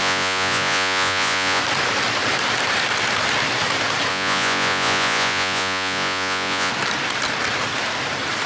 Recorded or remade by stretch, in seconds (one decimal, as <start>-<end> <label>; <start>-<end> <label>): 0.0-1.6 remade; 1.6-4.1 recorded; 4.1-6.7 remade; 6.7-8.5 recorded